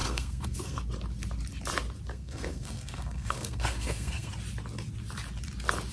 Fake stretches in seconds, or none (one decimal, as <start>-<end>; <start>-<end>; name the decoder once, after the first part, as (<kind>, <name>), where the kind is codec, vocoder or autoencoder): 0.0-0.8 (codec, SNAC); 2.1-4.3